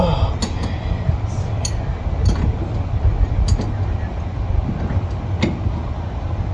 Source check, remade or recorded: recorded